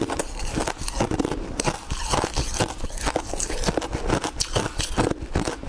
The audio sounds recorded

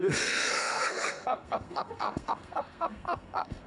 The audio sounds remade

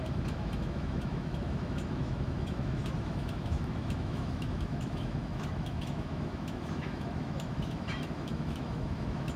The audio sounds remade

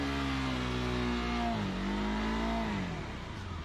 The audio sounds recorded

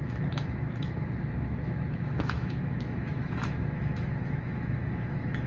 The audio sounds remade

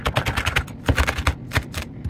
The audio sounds recorded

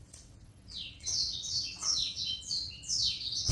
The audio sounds remade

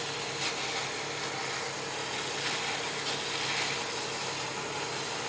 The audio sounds recorded